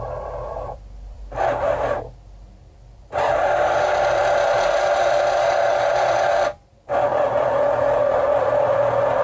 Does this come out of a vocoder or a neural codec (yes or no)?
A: yes